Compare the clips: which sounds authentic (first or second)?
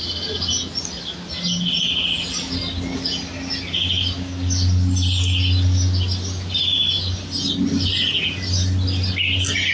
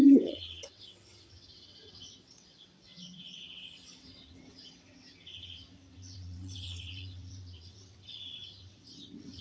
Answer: first